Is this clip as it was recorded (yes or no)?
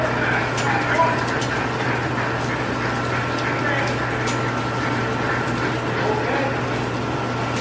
yes